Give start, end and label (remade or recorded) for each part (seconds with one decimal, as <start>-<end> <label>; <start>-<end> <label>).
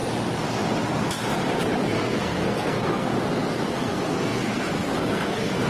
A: 0.0-1.8 recorded; 1.8-3.1 remade; 3.1-3.7 recorded; 3.7-5.7 remade